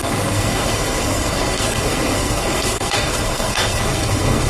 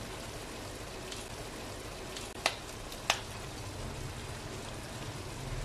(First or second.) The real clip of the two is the second